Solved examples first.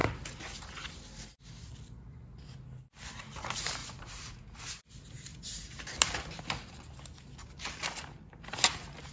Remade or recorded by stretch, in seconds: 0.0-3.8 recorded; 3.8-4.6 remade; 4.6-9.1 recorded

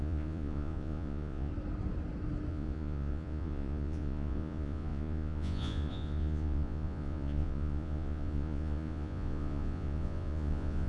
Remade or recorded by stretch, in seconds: 0.0-1.5 remade; 1.5-2.5 recorded; 2.5-10.9 remade

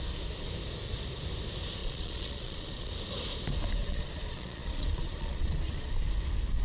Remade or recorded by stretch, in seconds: 0.0-1.8 recorded; 1.8-2.9 remade; 2.9-3.8 recorded; 3.8-5.9 remade; 5.9-6.6 recorded

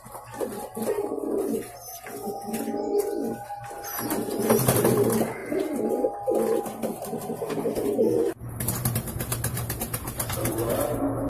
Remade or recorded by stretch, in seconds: 0.0-11.3 recorded